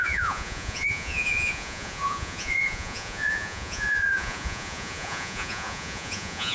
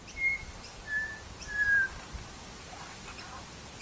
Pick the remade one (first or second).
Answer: first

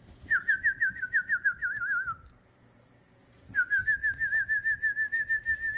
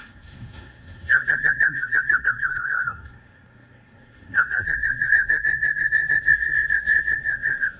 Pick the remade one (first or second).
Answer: second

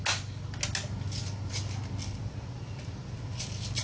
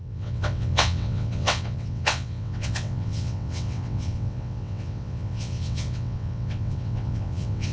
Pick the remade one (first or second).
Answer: second